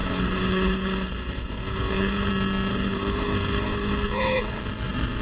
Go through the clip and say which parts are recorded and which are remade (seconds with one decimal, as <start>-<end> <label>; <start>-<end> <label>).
0.0-2.3 remade; 2.3-2.7 recorded; 2.7-4.6 remade; 4.6-5.2 recorded